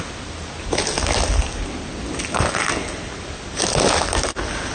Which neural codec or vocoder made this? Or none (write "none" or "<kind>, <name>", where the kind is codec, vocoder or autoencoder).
none